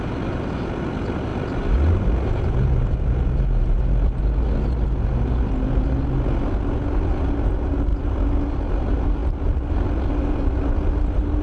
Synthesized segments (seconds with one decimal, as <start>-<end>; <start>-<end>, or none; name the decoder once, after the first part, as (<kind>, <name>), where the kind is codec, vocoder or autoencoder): none